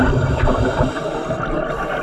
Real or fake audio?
real